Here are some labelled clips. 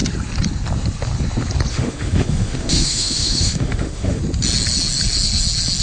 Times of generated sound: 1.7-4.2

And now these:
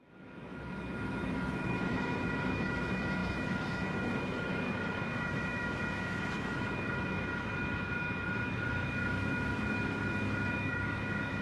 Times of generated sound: 0.0-11.4

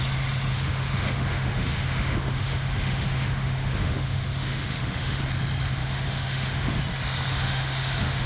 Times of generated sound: 0.5-5.2; 5.8-6.8; 7.3-8.3

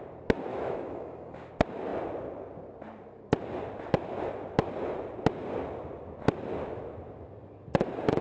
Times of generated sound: 0.5-1.5

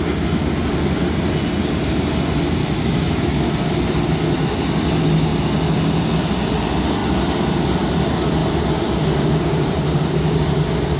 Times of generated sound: 2.6-3.5

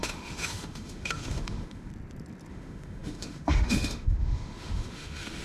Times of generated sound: 0.0-1.9; 2.5-5.4